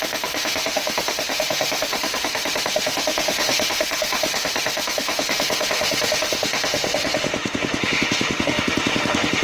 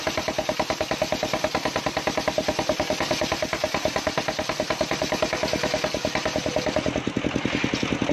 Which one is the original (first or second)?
second